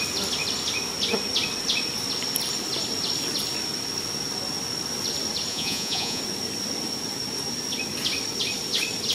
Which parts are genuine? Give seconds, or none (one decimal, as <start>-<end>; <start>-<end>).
0.0-5.5; 6.2-9.1